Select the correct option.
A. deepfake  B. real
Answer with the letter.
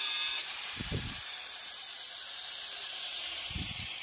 A